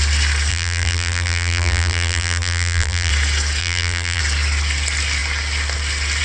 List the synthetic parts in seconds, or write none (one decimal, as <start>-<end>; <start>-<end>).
0.5-3.1; 3.6-4.2